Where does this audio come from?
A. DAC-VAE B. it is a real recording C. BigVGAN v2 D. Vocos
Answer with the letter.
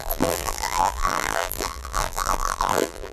C